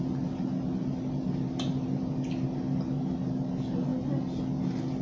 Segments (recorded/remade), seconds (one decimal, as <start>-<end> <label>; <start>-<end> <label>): 0.0-5.0 recorded